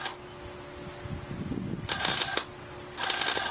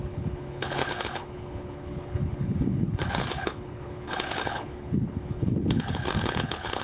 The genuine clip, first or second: first